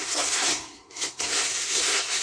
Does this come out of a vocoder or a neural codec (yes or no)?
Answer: yes